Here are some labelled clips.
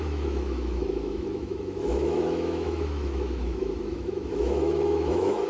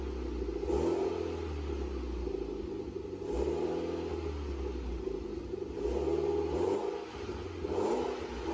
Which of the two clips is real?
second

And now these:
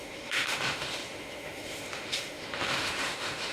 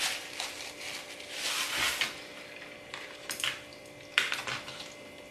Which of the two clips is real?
second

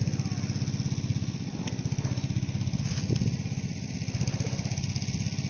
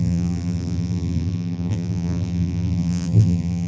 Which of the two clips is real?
first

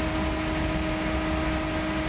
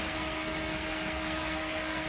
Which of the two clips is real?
first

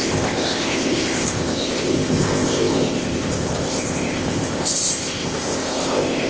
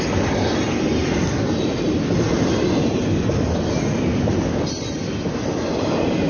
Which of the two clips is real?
second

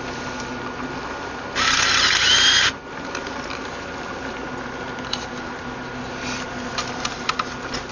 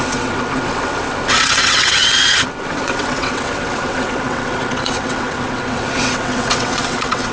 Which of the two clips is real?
first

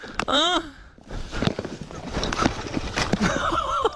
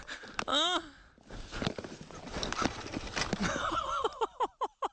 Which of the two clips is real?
second